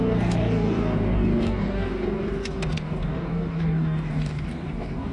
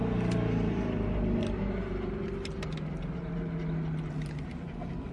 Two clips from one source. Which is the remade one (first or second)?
first